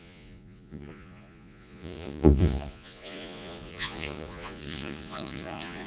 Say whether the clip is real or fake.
fake